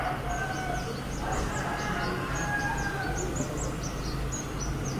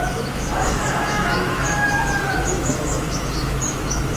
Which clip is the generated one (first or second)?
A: second